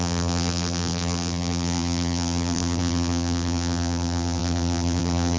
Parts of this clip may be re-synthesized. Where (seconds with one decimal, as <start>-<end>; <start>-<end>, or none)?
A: 0.0-5.4